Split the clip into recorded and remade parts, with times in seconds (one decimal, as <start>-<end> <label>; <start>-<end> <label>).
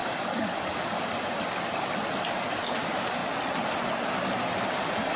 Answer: 0.0-2.1 remade; 2.1-5.2 recorded